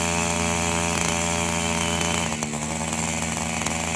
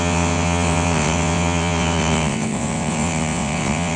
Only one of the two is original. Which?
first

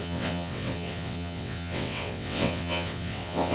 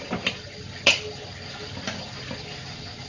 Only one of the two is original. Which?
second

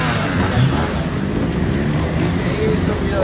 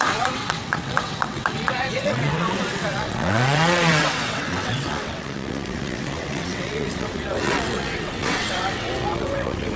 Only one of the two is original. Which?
first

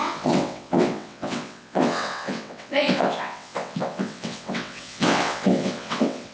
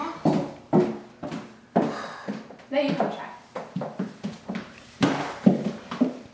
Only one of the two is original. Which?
second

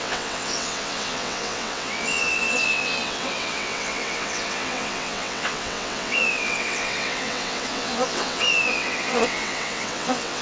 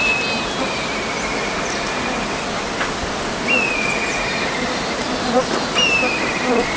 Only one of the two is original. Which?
second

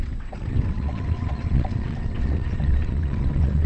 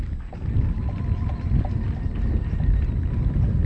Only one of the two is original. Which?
second